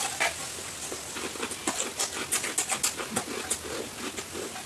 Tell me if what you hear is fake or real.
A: real